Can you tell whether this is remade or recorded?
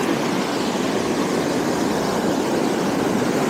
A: recorded